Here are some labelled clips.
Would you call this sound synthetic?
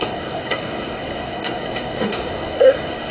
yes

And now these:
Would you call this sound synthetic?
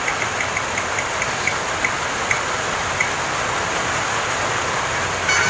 no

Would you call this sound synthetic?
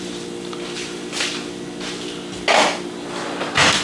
no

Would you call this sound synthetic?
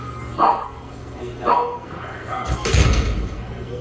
yes